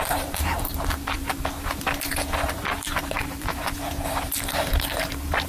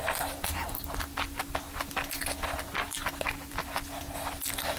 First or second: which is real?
second